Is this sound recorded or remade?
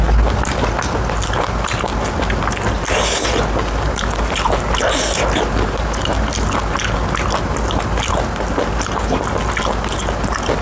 recorded